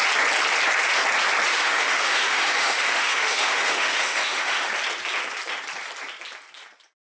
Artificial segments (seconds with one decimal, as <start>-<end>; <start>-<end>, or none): 1.5-4.7